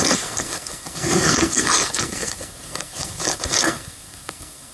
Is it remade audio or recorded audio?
remade